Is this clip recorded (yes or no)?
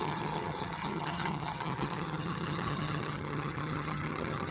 no